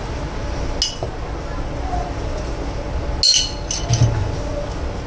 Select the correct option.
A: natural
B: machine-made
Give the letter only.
A